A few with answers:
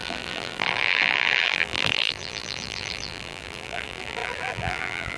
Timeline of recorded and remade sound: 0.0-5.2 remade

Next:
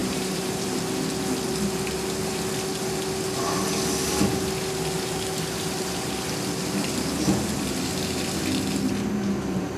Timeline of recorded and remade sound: 0.0-0.8 remade; 0.8-9.8 recorded

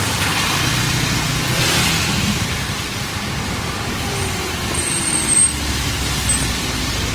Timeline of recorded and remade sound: 0.0-7.1 recorded

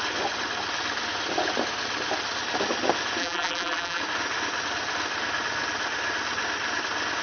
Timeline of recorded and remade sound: 0.0-3.2 recorded; 3.2-4.0 remade; 4.0-7.2 recorded

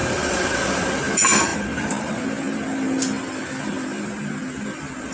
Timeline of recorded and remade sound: 0.0-1.1 remade; 1.1-1.5 recorded; 1.5-2.2 remade; 2.2-5.1 recorded